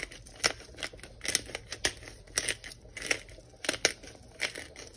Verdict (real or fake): real